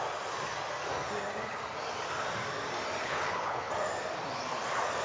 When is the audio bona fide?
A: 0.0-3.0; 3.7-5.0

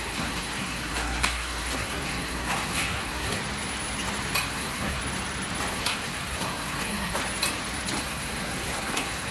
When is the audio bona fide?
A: 3.4-4.5; 5.0-5.7; 7.2-8.0

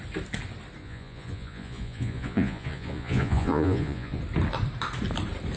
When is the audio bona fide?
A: 0.0-0.8; 4.2-5.6

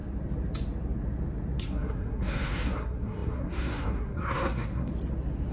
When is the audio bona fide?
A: 0.0-1.6; 4.9-5.5

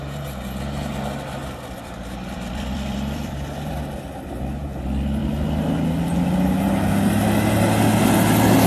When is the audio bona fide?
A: 0.0-1.4; 3.7-8.7